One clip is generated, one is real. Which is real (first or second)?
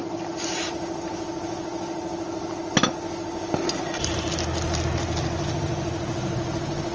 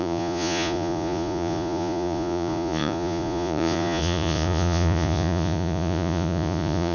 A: first